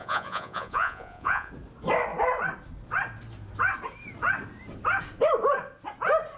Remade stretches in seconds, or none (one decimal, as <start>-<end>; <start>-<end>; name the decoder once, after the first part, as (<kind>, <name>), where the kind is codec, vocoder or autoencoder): 0.0-1.5 (vocoder, Vocos)